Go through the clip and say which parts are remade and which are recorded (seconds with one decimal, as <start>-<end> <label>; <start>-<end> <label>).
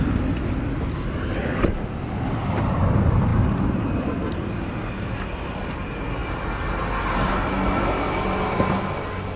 0.0-3.3 recorded; 3.3-4.7 remade; 4.7-6.2 recorded; 6.2-7.5 remade; 7.5-9.4 recorded